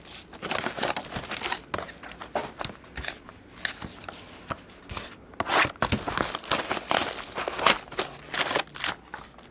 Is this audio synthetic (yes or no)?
no